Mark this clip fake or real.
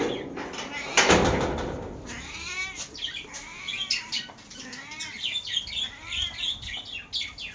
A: real